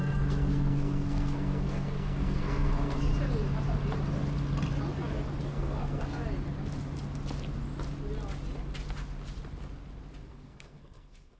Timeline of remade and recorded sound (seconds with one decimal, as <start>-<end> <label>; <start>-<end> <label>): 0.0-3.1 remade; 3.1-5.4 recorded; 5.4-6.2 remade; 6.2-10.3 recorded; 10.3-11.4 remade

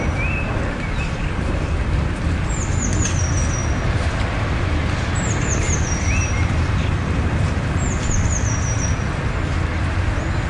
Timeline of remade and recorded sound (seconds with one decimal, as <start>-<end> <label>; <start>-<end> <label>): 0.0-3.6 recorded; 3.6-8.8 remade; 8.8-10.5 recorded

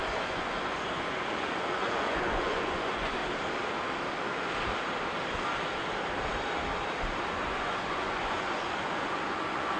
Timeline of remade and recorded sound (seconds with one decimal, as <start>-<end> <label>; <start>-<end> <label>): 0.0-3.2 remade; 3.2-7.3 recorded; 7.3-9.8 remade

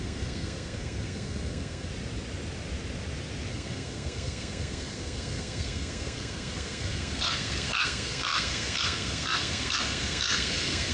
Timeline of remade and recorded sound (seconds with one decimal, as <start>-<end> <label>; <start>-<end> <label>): 0.0-1.9 remade; 1.9-3.5 recorded; 3.5-10.9 remade